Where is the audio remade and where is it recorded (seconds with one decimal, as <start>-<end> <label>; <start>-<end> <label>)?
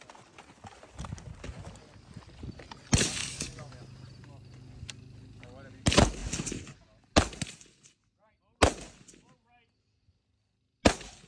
0.0-3.2 recorded; 3.2-3.7 remade; 3.7-11.3 recorded